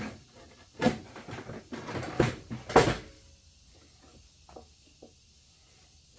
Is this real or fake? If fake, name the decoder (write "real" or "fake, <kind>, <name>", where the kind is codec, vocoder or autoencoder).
real